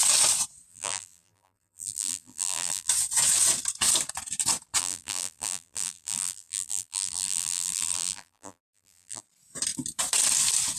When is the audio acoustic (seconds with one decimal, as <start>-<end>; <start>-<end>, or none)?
0.0-0.7; 2.9-4.8; 9.2-10.8